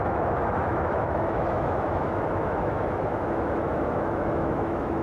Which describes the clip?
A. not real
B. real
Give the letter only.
A